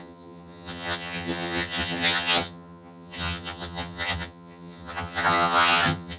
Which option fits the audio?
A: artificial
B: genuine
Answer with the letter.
A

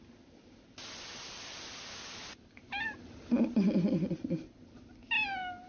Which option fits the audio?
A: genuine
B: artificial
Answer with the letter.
A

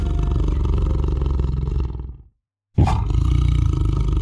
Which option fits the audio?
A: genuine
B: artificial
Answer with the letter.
A